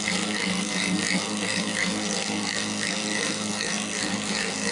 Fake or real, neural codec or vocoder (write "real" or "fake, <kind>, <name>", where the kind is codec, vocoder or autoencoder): fake, codec, SNAC